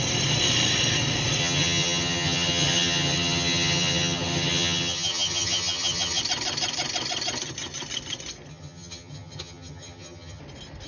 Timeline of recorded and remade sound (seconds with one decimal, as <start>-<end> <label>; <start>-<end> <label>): 0.0-1.4 recorded; 1.4-6.2 remade; 6.2-8.5 recorded; 8.5-10.4 remade; 10.4-10.9 recorded